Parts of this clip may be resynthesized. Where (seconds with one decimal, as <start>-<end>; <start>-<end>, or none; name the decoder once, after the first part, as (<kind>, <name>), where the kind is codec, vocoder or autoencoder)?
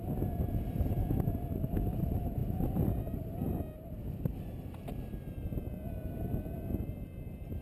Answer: none